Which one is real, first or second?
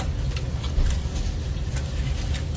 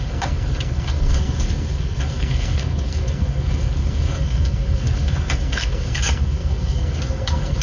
first